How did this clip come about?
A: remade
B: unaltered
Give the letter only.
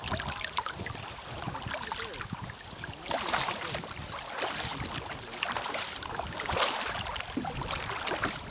B